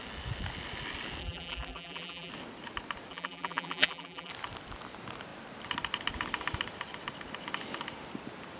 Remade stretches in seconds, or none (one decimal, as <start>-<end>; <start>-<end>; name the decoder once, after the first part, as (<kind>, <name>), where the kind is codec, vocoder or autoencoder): 1.2-2.3 (vocoder, BigVGAN v2); 3.1-4.3